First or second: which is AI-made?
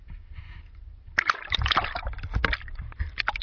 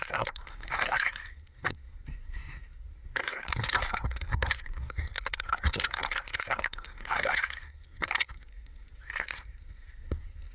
second